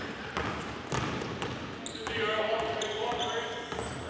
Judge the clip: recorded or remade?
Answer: recorded